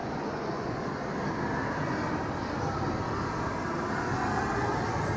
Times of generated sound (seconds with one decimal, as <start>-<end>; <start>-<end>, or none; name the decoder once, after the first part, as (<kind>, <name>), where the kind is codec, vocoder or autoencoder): 0.0-1.0 (vocoder, Vocos)